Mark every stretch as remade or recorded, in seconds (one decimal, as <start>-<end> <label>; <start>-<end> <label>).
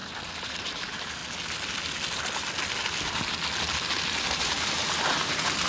0.0-0.5 recorded; 0.5-1.2 remade; 1.2-4.2 recorded; 4.2-5.7 remade